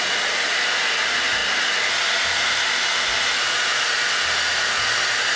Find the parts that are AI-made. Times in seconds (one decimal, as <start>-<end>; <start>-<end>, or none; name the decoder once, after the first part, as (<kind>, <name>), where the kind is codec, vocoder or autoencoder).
none

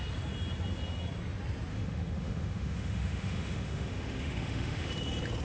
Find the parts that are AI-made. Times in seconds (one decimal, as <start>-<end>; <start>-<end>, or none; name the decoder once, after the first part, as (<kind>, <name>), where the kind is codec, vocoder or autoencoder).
1.7-4.9 (autoencoder, DAC-VAE)